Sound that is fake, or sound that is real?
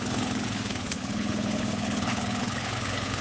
fake